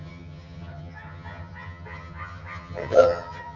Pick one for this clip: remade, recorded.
remade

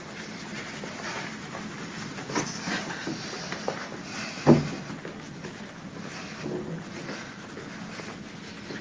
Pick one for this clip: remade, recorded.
recorded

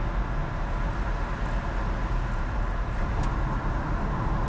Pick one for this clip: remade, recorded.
recorded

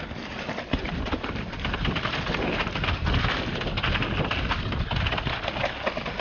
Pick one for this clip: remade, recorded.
recorded